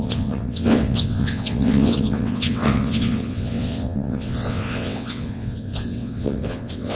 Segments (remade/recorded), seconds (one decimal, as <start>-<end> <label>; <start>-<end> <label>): 0.0-7.0 remade